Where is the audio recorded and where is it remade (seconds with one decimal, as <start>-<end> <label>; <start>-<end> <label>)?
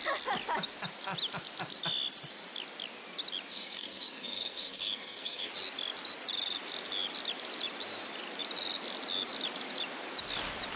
0.0-3.5 recorded; 3.5-5.5 remade; 5.5-10.8 recorded